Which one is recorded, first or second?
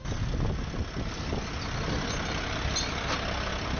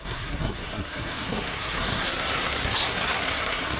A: first